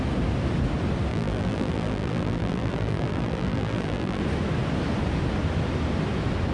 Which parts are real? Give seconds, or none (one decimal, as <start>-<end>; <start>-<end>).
0.0-1.1; 4.2-6.5